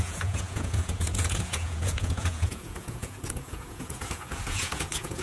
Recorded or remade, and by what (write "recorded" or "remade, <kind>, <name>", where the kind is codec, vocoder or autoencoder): remade, vocoder, Vocos